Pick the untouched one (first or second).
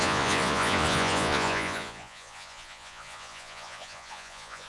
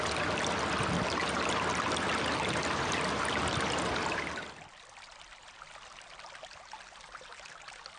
second